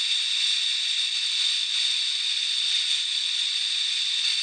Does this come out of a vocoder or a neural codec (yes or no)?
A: no